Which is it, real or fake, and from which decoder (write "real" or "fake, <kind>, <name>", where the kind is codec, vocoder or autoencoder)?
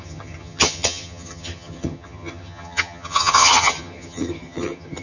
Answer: fake, vocoder, HiFi-GAN